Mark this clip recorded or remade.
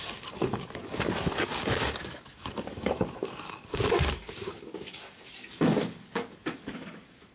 remade